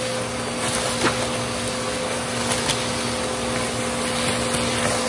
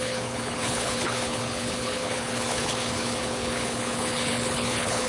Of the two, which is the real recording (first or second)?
first